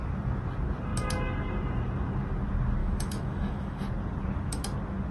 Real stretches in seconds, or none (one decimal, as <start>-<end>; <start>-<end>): 0.0-2.8; 3.9-5.1